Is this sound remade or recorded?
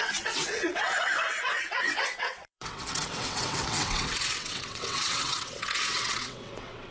remade